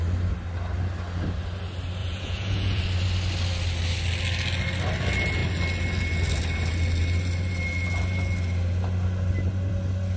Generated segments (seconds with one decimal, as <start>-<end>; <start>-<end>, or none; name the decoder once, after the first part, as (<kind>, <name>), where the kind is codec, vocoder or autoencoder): 2.0-2.8 (vocoder, Vocos)